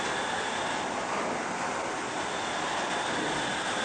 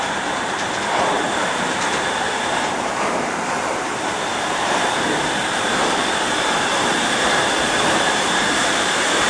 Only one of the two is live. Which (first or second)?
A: first